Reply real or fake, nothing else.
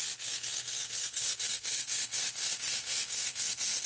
fake